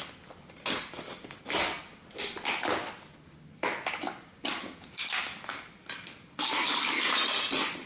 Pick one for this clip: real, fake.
real